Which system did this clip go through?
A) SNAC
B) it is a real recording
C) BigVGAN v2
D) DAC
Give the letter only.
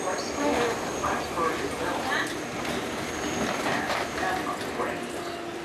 B